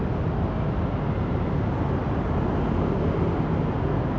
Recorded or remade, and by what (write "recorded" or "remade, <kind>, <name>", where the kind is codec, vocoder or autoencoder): recorded